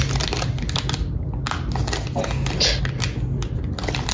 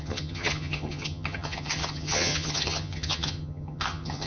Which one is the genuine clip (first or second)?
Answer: first